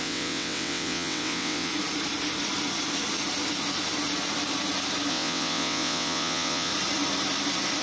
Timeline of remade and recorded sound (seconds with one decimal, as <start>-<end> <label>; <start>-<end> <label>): 0.0-1.7 remade; 1.7-5.1 recorded; 5.1-6.7 remade; 6.7-7.8 recorded